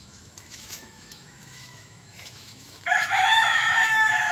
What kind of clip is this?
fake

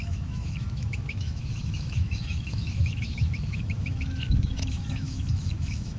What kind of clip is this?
fake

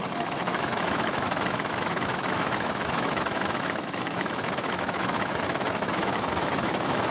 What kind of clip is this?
fake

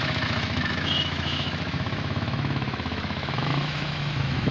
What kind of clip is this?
fake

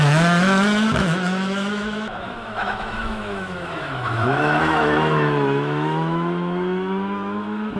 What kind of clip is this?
fake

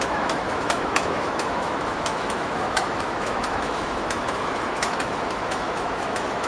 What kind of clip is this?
fake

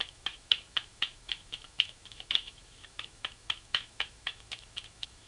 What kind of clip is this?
fake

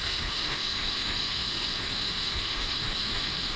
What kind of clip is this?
fake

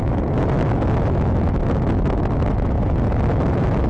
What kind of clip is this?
fake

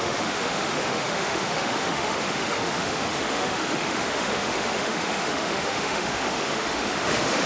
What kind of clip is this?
fake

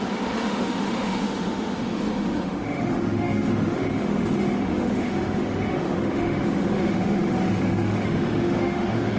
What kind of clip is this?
fake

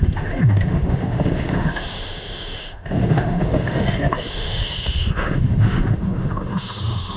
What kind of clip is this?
fake